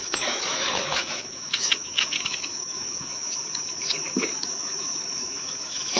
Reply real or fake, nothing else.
fake